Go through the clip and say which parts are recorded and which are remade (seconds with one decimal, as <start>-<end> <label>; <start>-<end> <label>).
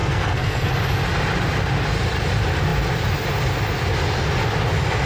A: 0.0-0.7 remade; 0.7-5.1 recorded